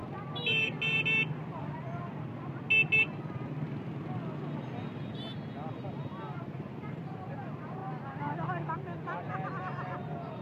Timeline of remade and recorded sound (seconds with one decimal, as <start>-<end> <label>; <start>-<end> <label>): 0.0-10.4 recorded